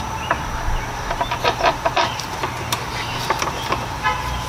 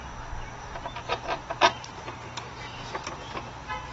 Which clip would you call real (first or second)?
second